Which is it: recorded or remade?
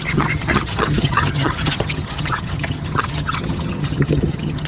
remade